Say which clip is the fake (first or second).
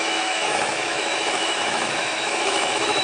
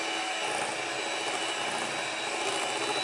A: first